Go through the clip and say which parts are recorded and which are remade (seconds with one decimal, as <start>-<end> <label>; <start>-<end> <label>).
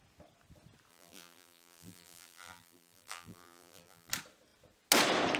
0.0-0.9 recorded; 0.9-4.1 remade; 4.1-5.4 recorded